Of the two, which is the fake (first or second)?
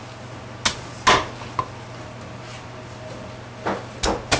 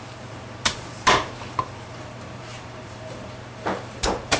second